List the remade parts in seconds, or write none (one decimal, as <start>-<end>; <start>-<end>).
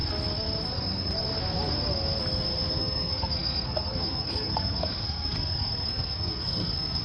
0.7-1.2; 2.7-7.0